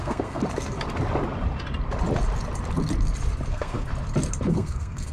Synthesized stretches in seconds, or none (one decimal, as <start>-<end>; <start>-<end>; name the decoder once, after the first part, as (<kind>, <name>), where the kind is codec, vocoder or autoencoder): 0.0-0.4 (codec, SNAC); 3.5-3.9; 4.5-5.1